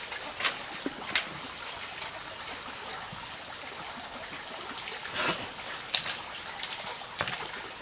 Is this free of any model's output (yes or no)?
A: yes